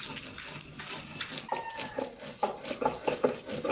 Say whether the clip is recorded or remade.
recorded